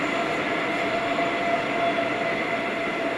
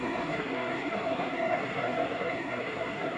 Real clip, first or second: first